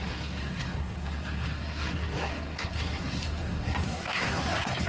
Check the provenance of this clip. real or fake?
fake